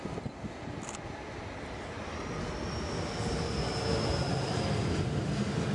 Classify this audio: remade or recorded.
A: recorded